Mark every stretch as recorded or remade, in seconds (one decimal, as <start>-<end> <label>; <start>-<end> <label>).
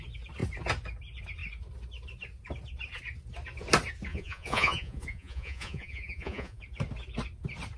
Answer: 0.0-4.1 recorded; 4.1-6.6 remade; 6.6-7.8 recorded